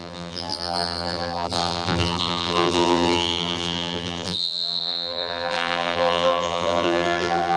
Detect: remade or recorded remade